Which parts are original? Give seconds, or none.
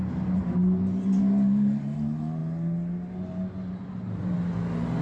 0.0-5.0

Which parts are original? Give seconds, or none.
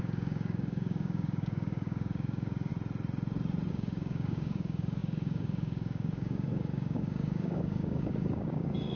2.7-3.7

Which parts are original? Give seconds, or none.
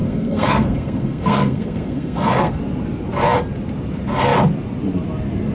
2.6-5.5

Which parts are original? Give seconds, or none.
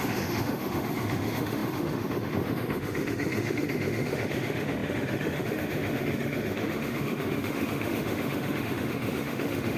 none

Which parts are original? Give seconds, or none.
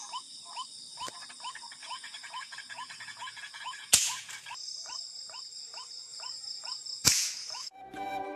0.0-1.8; 4.3-6.1